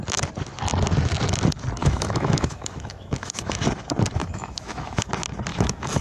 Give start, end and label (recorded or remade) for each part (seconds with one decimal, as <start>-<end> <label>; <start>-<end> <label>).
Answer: 0.0-1.8 recorded; 1.8-3.6 remade; 3.6-4.2 recorded; 4.2-5.1 remade; 5.1-5.5 recorded; 5.5-6.0 remade